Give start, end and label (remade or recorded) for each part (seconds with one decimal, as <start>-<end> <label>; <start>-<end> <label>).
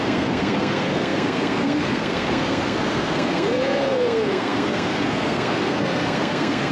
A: 0.0-6.7 remade